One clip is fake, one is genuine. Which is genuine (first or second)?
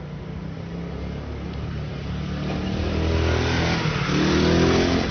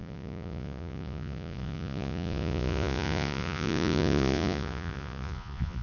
first